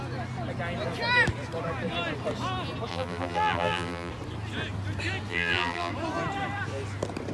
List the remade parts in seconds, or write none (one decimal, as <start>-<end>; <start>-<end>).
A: 2.9-4.1; 5.3-5.9